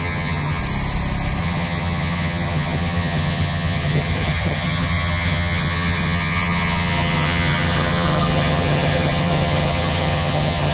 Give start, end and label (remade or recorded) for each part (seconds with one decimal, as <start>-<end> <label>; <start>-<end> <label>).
0.0-0.6 remade; 0.6-1.4 recorded; 1.4-10.7 remade